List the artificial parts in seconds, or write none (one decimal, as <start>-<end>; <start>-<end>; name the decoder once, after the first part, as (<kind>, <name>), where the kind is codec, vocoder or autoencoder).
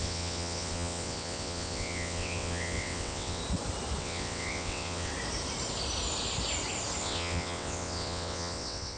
0.0-3.4 (vocoder, WaveNeXt); 4.0-5.1; 7.0-9.0